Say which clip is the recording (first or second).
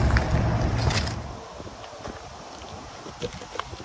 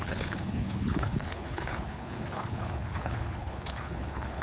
first